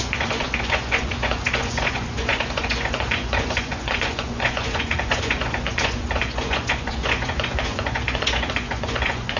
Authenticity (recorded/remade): remade